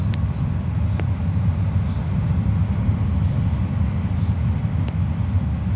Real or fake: real